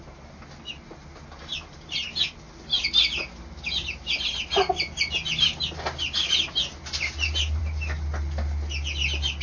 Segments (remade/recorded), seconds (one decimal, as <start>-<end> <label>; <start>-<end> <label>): 0.0-9.4 recorded

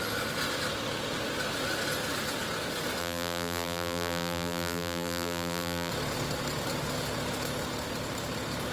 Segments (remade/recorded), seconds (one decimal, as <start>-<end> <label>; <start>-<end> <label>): 0.0-3.0 recorded; 3.0-5.9 remade; 5.9-8.7 recorded